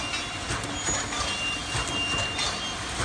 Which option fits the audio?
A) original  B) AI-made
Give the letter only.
A